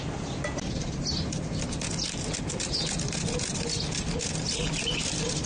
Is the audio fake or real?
real